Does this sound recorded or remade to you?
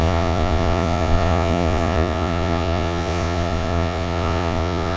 remade